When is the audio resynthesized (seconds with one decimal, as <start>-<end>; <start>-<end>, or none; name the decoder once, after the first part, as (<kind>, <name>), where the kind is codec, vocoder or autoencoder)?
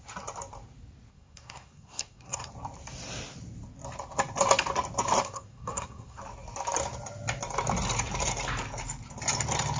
1.1-2.5 (codec, SNAC); 5.2-6.2